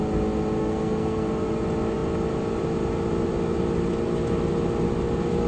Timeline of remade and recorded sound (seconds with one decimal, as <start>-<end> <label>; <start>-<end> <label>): 0.0-0.6 recorded; 0.6-1.3 remade; 1.3-5.5 recorded